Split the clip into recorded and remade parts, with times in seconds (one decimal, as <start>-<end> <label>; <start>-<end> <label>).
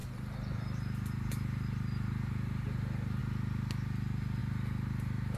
0.0-3.2 remade; 3.2-4.4 recorded; 4.4-5.4 remade